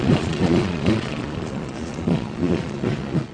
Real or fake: fake